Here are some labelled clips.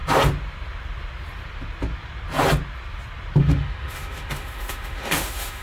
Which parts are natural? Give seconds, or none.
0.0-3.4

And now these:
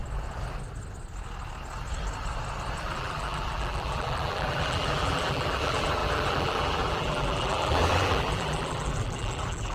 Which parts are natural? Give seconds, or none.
0.0-2.8

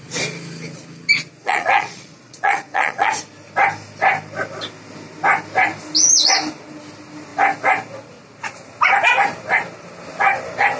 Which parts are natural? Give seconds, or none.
0.0-1.4; 3.1-10.8

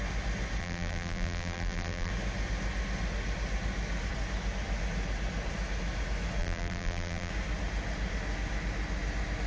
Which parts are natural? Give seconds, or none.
0.0-0.6; 2.1-6.4; 7.3-9.5